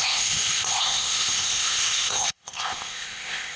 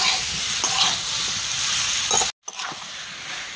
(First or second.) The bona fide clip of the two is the second